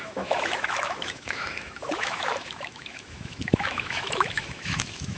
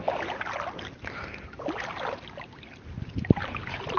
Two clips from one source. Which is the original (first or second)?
second